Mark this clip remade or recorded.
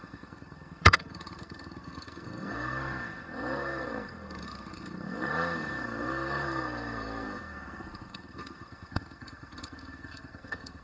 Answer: remade